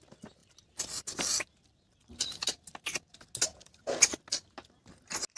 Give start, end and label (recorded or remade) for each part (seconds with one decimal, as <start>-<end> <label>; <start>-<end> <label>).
0.0-3.5 recorded; 3.5-4.2 remade; 4.2-5.4 recorded